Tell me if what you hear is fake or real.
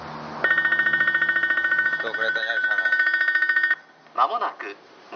real